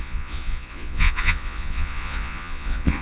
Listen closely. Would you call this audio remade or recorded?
remade